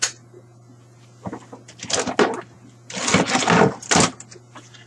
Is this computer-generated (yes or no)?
no